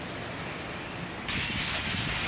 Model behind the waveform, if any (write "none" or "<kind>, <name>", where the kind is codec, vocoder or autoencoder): none